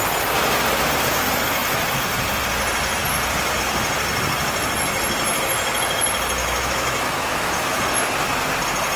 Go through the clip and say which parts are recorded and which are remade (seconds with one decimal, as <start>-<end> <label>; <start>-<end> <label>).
0.0-6.4 recorded; 6.4-7.8 remade; 7.8-9.0 recorded